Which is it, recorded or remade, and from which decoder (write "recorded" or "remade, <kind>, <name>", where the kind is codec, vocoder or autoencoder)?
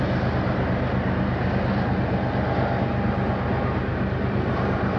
recorded